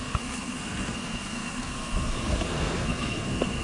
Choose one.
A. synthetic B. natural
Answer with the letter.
A